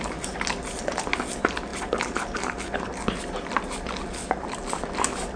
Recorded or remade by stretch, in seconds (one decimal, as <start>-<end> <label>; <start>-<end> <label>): 0.0-5.4 recorded